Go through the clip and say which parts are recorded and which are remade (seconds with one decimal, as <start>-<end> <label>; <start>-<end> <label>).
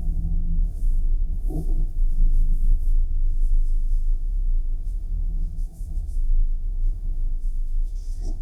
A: 0.0-8.4 remade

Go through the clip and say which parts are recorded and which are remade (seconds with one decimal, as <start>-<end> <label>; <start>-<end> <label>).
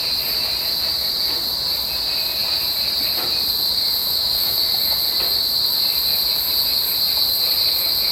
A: 0.0-4.0 recorded; 4.0-4.6 remade; 4.6-8.1 recorded